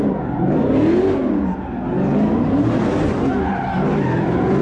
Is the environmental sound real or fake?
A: real